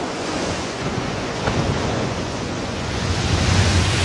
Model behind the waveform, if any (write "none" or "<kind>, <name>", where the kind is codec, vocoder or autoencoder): vocoder, Vocos